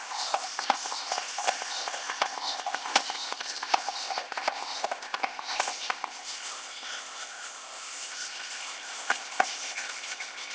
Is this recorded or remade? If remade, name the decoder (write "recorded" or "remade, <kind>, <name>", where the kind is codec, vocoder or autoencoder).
remade, codec, ZipCodec